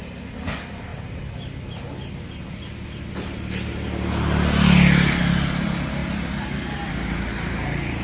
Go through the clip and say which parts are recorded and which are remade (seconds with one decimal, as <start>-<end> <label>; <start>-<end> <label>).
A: 0.0-8.0 recorded

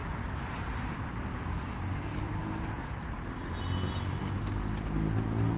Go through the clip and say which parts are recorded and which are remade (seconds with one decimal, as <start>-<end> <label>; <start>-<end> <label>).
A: 0.0-5.6 recorded

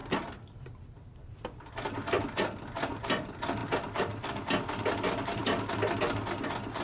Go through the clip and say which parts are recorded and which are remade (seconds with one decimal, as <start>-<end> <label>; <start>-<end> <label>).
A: 0.0-6.8 recorded

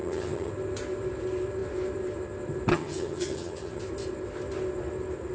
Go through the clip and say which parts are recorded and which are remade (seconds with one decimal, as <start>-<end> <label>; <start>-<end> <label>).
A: 0.0-0.5 remade; 0.5-2.7 recorded; 2.7-3.8 remade; 3.8-5.3 recorded

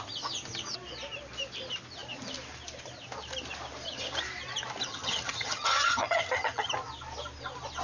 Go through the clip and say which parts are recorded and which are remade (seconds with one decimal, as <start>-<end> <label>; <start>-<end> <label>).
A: 0.0-4.9 recorded; 4.9-6.7 remade; 6.7-7.8 recorded

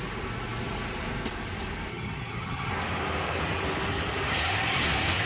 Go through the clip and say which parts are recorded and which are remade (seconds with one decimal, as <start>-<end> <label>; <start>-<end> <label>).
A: 0.0-1.9 recorded; 1.9-2.7 remade; 2.7-5.3 recorded